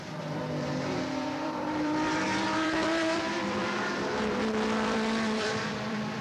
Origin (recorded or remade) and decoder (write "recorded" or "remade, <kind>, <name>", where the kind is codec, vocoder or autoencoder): remade, vocoder, BigVGAN v2